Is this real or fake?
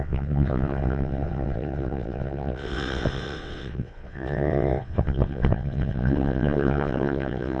fake